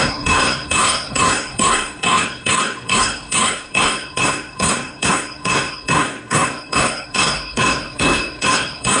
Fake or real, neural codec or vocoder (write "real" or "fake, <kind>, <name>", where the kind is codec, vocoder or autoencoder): fake, codec, SNAC